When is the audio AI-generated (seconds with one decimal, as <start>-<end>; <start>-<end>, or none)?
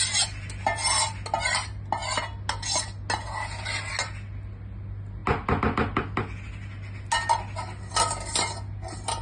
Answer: none